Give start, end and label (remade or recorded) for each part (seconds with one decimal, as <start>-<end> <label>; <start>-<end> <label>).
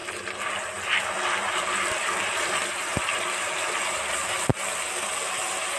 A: 0.0-1.1 recorded; 1.1-2.9 remade; 2.9-3.7 recorded; 3.7-4.5 remade; 4.5-5.1 recorded; 5.1-5.8 remade